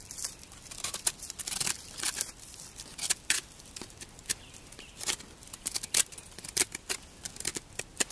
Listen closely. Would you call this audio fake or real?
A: fake